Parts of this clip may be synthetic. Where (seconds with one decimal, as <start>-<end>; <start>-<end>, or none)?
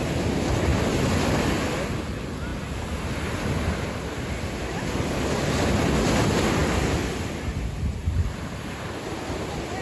none